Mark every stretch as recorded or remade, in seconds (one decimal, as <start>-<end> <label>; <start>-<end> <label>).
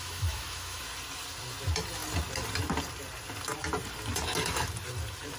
0.0-0.8 remade; 0.8-5.4 recorded